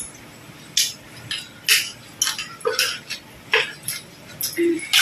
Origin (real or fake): real